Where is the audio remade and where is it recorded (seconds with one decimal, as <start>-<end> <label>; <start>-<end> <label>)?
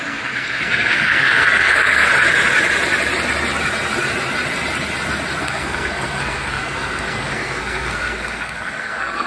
0.0-2.1 remade; 2.1-5.4 recorded; 5.4-9.3 remade